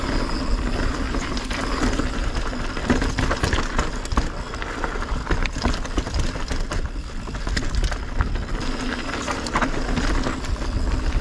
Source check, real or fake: real